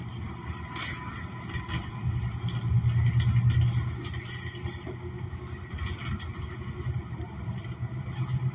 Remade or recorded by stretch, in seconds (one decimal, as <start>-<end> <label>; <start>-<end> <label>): 0.0-8.5 recorded